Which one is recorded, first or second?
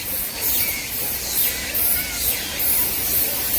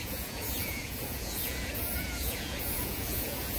first